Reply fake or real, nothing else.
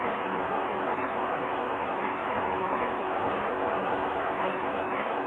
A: fake